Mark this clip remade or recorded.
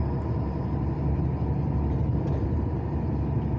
recorded